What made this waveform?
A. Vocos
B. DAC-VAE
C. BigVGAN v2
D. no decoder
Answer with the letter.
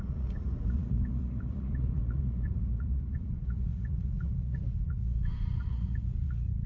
A